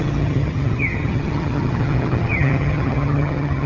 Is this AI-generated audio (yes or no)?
yes